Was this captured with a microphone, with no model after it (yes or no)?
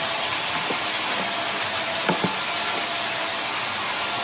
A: yes